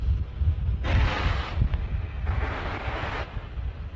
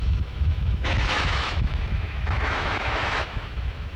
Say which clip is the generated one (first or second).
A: second